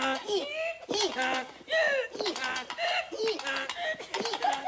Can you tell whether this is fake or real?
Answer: real